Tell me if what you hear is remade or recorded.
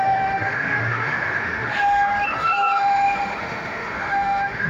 remade